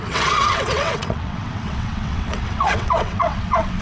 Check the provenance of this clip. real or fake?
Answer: fake